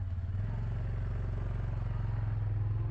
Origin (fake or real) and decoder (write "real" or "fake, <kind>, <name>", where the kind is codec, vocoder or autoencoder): real